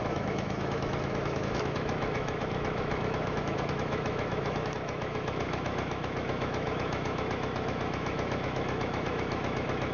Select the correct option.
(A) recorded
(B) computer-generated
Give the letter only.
B